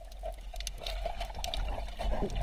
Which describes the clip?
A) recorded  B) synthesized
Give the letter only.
A